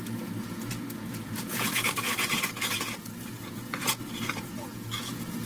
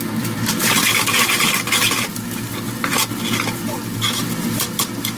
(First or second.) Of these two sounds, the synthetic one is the first